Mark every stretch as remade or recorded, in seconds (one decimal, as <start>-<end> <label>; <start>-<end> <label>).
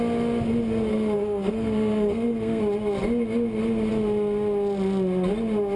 0.0-0.9 recorded; 0.9-2.6 remade; 2.6-5.8 recorded